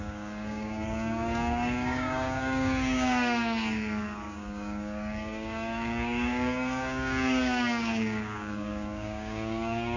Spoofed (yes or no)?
yes